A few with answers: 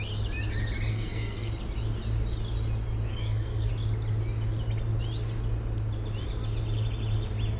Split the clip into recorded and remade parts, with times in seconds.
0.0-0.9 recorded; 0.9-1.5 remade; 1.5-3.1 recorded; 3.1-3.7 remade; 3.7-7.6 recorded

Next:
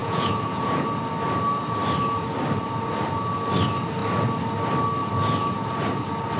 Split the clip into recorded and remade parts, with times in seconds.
0.0-0.8 remade; 0.8-6.4 recorded

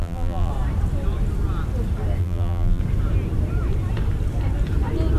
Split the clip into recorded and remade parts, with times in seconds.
0.0-0.5 remade; 0.5-2.2 recorded; 2.2-2.8 remade; 2.8-5.2 recorded